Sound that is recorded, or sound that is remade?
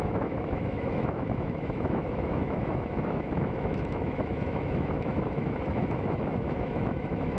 remade